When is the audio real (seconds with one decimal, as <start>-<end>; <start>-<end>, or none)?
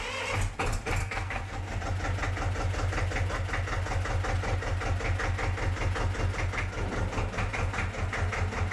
0.0-1.0; 1.8-8.7